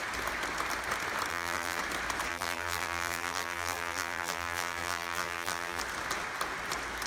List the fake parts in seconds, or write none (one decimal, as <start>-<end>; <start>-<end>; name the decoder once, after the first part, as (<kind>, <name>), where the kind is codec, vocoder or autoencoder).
1.3-1.8 (vocoder, BigVGAN v2); 2.3-5.8